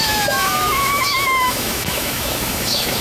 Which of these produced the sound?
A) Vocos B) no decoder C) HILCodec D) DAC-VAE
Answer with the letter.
D